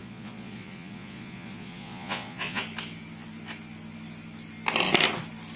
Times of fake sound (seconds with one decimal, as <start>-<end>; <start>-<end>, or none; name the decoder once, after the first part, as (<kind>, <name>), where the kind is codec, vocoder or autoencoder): 0.0-2.6 (vocoder, Vocos)